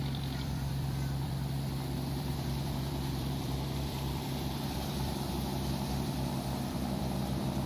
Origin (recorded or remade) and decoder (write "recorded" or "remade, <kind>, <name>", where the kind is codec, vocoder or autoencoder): remade, vocoder, BigVGAN v2